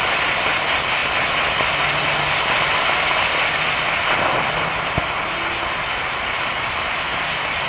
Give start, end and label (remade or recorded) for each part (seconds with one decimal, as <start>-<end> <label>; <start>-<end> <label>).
0.0-7.7 recorded